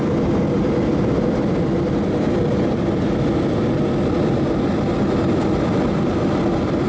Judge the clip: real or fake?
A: real